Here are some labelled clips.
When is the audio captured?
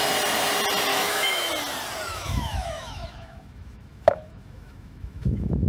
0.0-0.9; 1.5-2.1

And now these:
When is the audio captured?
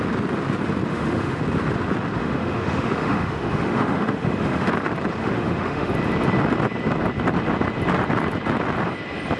0.0-0.9; 1.4-2.2; 4.7-5.2; 5.9-9.4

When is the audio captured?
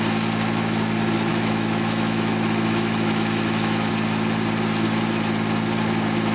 0.0-1.3; 3.9-6.3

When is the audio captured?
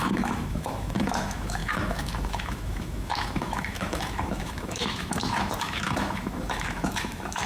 none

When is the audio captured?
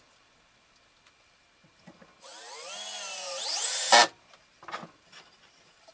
0.0-5.9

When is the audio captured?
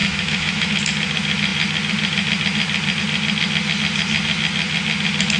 0.8-5.4